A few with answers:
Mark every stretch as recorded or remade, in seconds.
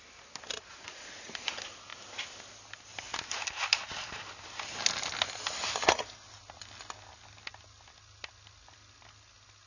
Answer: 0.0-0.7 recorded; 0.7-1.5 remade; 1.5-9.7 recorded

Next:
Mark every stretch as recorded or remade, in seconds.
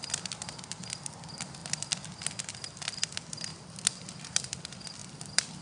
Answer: 0.0-3.5 recorded; 3.5-4.5 remade; 4.5-5.0 recorded; 5.0-5.6 remade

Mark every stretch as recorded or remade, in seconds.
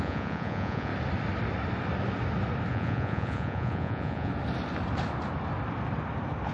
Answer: 0.0-0.9 remade; 0.9-2.7 recorded; 2.7-4.3 remade; 4.3-6.5 recorded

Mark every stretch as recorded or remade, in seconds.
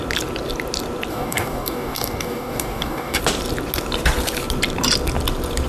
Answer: 0.0-1.1 recorded; 1.1-3.2 remade; 3.2-5.7 recorded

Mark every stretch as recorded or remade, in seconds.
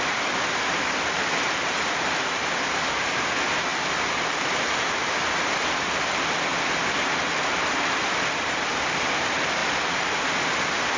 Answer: 0.0-6.5 remade; 6.5-8.0 recorded; 8.0-9.6 remade; 9.6-10.2 recorded; 10.2-11.0 remade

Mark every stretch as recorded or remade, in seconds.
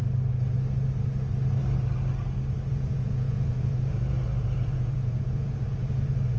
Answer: 0.0-2.7 recorded; 2.7-6.4 remade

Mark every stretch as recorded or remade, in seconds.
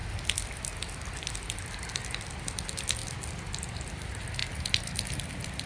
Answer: 0.0-5.7 recorded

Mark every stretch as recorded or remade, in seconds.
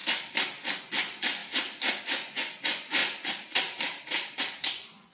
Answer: 0.0-0.8 recorded; 0.8-1.4 remade; 1.4-2.0 recorded; 2.0-3.0 remade; 3.0-4.4 recorded; 4.4-5.1 remade